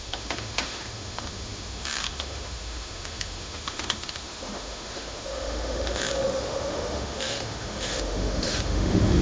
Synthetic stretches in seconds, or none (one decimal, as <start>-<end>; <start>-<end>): 0.0-9.2